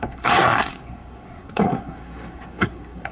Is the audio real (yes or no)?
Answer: no